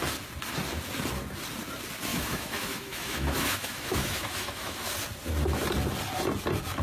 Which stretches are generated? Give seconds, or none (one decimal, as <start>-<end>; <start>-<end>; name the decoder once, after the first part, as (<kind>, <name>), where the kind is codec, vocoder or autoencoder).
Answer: 2.1-4.9 (autoencoder, DAC-VAE)